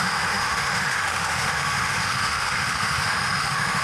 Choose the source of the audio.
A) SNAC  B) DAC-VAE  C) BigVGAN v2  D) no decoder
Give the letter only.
B